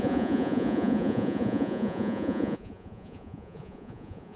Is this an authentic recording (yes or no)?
no